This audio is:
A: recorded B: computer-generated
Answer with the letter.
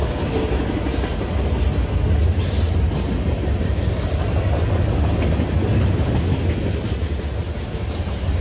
A